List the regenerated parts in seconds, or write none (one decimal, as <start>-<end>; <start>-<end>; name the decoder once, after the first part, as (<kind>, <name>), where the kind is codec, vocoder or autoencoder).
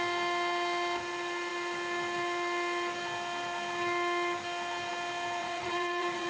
5.4-6.3 (vocoder, Vocos)